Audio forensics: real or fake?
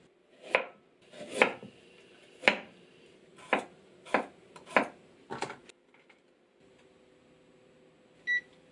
real